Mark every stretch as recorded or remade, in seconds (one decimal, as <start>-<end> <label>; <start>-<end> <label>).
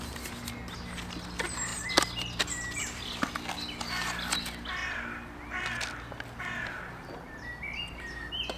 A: 0.0-8.6 recorded